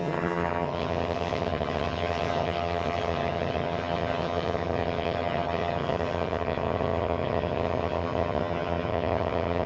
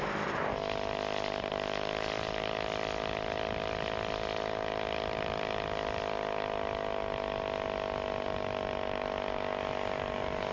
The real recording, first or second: second